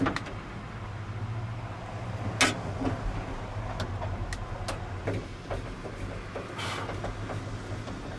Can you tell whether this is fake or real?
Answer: real